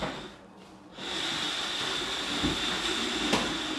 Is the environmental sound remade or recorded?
recorded